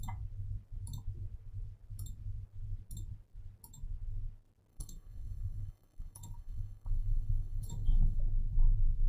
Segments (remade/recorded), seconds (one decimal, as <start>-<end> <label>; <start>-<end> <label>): 0.0-4.7 recorded; 4.7-8.2 remade; 8.2-9.1 recorded